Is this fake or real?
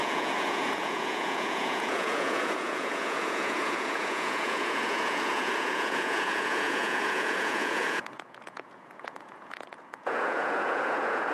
fake